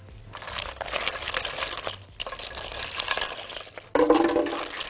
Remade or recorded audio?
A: recorded